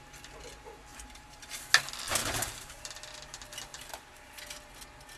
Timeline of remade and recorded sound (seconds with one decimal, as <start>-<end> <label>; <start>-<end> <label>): 0.0-0.9 recorded; 0.9-1.6 remade; 1.6-2.2 recorded; 2.2-2.7 remade; 2.7-3.7 recorded; 3.7-4.4 remade; 4.4-5.2 recorded